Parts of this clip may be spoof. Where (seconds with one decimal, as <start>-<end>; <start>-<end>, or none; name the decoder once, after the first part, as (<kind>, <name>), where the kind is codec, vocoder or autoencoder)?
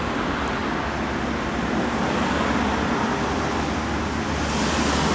none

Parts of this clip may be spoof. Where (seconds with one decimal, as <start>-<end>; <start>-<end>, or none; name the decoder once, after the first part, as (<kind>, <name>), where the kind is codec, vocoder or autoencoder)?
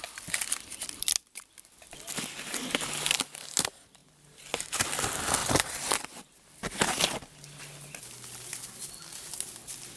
none